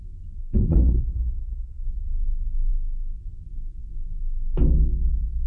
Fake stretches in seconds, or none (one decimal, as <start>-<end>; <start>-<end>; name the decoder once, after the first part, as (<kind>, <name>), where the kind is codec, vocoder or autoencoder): 0.4-1.9 (codec, SNAC)